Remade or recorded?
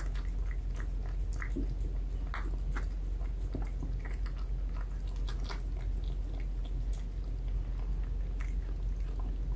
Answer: recorded